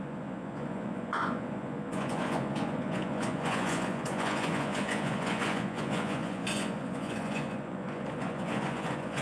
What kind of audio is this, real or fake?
fake